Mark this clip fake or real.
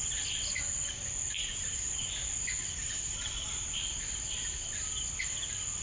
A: real